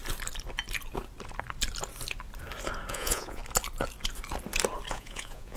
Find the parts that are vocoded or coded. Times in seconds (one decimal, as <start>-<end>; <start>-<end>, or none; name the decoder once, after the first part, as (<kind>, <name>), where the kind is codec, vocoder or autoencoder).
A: 2.9-3.4 (vocoder, Vocos); 4.9-5.6